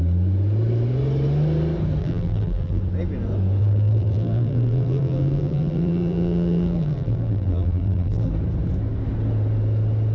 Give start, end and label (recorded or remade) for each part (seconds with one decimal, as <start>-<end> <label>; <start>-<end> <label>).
0.0-2.0 recorded; 2.0-2.8 remade; 2.8-3.6 recorded; 3.6-8.3 remade; 8.3-10.1 recorded